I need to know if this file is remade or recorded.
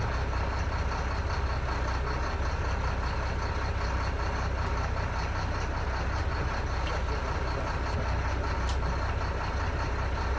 recorded